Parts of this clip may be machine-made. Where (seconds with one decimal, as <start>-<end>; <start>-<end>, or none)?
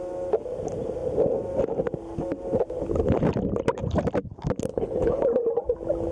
4.7-5.2